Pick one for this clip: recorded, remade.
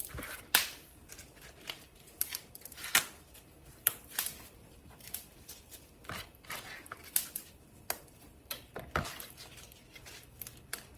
remade